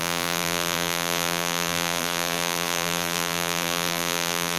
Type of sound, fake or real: fake